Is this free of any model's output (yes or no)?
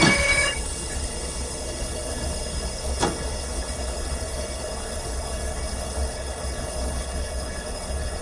no